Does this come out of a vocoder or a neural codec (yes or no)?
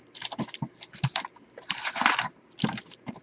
yes